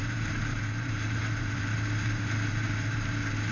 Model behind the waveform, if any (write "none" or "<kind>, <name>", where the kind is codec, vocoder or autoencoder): vocoder, BigVGAN v2